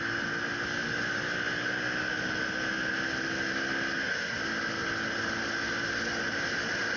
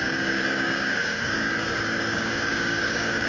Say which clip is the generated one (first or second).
second